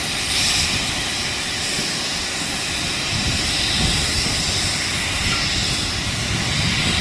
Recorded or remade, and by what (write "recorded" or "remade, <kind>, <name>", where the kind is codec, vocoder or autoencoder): recorded